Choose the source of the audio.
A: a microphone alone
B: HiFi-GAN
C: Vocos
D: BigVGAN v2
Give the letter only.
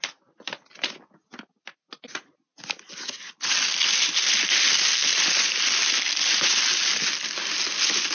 A